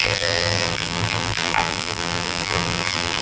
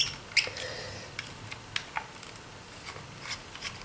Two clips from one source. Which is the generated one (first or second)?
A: first